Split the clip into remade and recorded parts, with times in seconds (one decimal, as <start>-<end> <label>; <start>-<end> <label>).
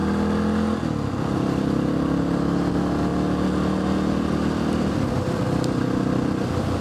0.0-6.8 recorded